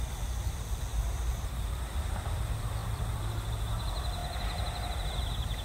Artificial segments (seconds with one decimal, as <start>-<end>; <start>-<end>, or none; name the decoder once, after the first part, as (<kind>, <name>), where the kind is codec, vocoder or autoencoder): 0.9-1.9 (vocoder, BigVGAN v2)